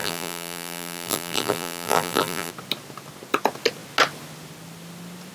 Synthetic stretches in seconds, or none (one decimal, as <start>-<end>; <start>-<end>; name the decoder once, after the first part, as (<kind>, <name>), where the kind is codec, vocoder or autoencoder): 0.0-2.5 (vocoder, BigVGAN v2)